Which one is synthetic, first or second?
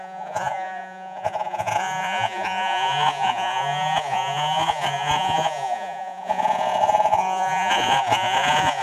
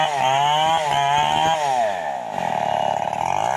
first